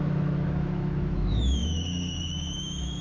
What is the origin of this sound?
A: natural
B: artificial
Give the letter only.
B